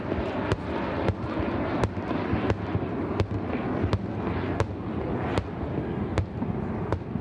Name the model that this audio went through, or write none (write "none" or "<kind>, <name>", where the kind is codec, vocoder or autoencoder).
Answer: none